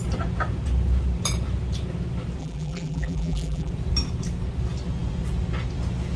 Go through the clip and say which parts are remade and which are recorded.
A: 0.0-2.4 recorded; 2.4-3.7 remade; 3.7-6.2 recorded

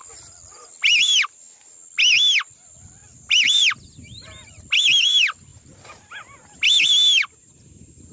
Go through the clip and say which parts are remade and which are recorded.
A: 0.0-8.1 recorded

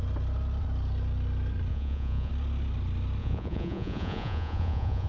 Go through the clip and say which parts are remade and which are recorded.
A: 0.0-1.7 recorded; 1.7-2.3 remade; 2.3-3.2 recorded; 3.2-5.1 remade

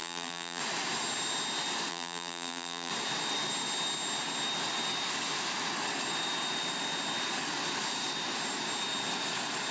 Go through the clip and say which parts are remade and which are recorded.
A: 0.0-0.6 remade; 0.6-1.9 recorded; 1.9-2.9 remade; 2.9-9.7 recorded

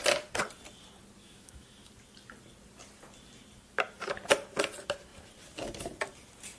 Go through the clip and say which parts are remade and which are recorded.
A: 0.0-1.2 recorded; 1.2-1.9 remade; 1.9-6.6 recorded

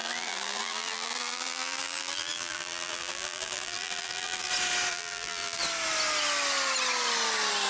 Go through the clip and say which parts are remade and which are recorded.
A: 0.0-4.5 remade; 4.5-4.9 recorded; 4.9-5.6 remade; 5.6-7.7 recorded

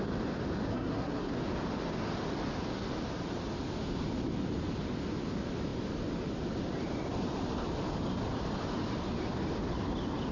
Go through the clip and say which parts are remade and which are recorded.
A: 0.0-0.7 recorded; 0.7-1.3 remade; 1.3-10.3 recorded

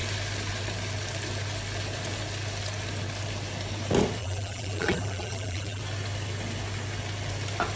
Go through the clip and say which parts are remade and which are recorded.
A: 0.0-4.2 recorded; 4.2-5.8 remade; 5.8-7.8 recorded